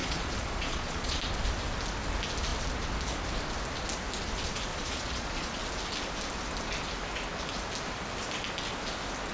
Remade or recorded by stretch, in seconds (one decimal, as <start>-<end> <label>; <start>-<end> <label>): 0.0-1.2 remade; 1.2-4.7 recorded; 4.7-5.6 remade; 5.6-9.3 recorded

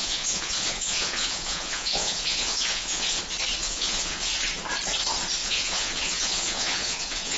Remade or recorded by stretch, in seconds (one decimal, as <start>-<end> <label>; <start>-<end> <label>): 0.0-3.2 remade; 3.2-3.6 recorded; 3.6-4.3 remade; 4.3-5.4 recorded; 5.4-7.4 remade